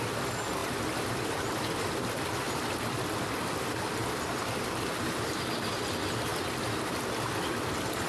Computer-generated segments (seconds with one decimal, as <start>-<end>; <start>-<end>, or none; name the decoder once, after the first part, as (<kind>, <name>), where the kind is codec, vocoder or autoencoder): none